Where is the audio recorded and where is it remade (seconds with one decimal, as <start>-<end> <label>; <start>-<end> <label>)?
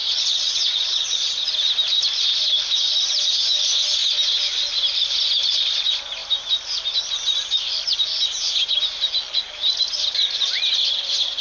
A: 0.0-1.5 remade; 1.5-11.4 recorded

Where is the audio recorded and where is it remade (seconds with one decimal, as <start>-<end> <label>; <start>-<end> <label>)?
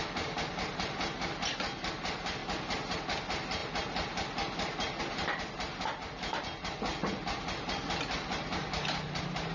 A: 0.0-9.5 recorded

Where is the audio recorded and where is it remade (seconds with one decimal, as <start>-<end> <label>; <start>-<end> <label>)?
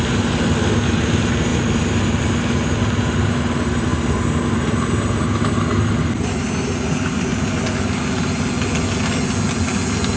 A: 0.0-10.2 recorded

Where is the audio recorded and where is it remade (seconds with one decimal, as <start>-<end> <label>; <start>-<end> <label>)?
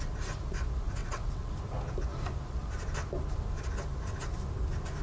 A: 0.0-1.0 recorded; 1.0-1.5 remade; 1.5-5.0 recorded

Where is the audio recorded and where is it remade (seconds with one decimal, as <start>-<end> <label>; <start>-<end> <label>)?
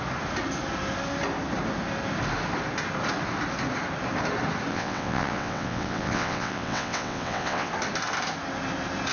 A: 0.0-4.7 recorded; 4.7-7.7 remade; 7.7-9.1 recorded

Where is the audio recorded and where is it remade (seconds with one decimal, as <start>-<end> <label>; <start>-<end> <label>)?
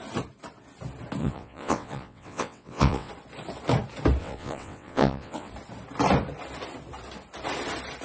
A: 0.0-1.2 recorded; 1.2-3.1 remade; 3.1-4.2 recorded; 4.2-5.5 remade; 5.5-8.0 recorded